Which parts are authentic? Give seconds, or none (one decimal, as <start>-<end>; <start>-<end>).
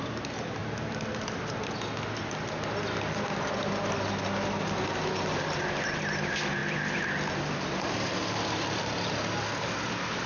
0.0-10.3